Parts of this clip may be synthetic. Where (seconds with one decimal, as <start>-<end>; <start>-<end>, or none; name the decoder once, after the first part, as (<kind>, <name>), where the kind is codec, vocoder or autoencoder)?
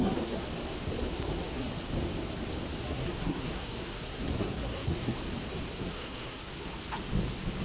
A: 0.0-0.5 (codec, SNAC); 1.1-1.7; 2.8-5.2; 5.7-6.7